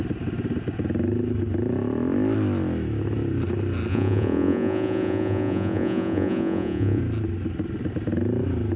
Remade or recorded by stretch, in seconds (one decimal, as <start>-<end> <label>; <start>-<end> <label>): 0.0-3.9 recorded; 3.9-7.0 remade; 7.0-8.8 recorded

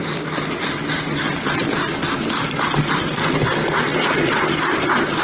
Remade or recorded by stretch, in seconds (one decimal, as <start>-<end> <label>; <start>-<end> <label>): 0.0-5.2 recorded

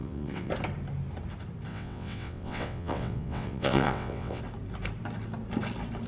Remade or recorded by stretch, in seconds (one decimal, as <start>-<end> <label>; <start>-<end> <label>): 0.0-0.5 remade; 0.5-1.7 recorded; 1.7-4.4 remade; 4.4-6.1 recorded